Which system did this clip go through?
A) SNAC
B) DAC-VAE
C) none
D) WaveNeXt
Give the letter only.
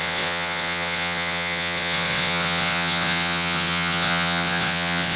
D